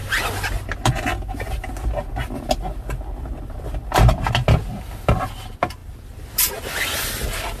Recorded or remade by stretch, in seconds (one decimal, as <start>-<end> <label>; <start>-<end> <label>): 0.0-7.6 recorded